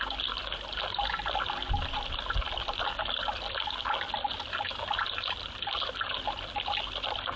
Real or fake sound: real